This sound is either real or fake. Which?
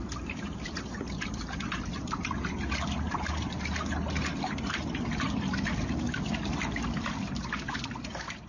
real